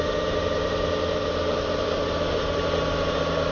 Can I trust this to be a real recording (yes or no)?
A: no